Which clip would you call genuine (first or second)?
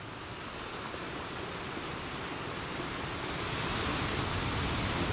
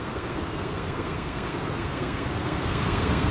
first